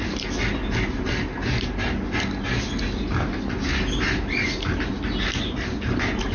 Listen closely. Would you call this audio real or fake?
real